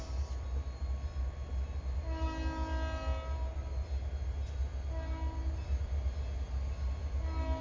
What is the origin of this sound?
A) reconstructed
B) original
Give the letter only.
B